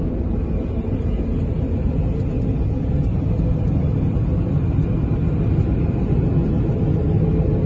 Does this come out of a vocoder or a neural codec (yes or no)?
no